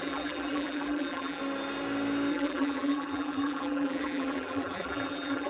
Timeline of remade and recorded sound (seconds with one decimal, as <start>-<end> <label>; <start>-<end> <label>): 0.0-1.4 remade; 1.4-2.3 recorded; 2.3-5.5 remade